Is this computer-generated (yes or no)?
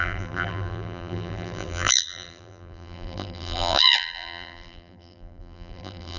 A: yes